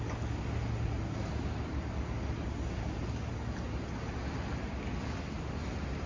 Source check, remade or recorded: recorded